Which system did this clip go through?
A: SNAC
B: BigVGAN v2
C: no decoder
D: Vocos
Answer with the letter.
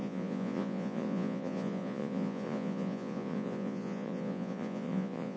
D